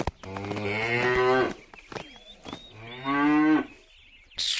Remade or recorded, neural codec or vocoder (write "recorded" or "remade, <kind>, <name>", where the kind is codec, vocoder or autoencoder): recorded